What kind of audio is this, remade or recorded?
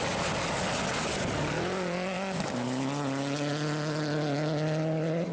recorded